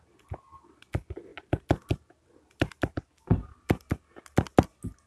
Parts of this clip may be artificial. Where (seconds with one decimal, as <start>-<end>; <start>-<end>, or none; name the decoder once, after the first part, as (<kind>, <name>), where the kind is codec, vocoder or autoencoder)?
none